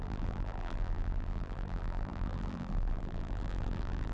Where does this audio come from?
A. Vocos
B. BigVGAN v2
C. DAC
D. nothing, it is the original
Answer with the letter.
B